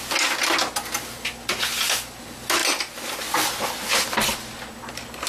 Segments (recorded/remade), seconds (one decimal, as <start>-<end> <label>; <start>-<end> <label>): 0.0-5.3 recorded